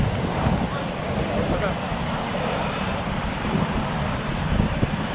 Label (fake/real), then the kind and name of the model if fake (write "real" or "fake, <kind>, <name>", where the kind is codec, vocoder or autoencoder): fake, vocoder, BigVGAN v2